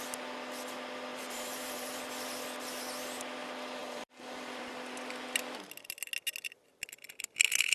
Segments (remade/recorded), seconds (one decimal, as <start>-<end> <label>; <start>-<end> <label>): 0.0-1.1 recorded; 1.1-2.0 remade; 2.0-3.8 recorded; 3.8-4.7 remade; 4.7-7.7 recorded